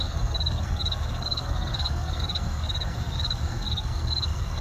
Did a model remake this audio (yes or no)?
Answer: yes